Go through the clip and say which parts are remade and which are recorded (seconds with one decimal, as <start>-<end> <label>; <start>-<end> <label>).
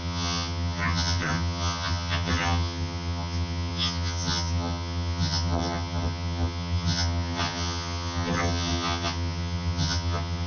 0.0-10.5 remade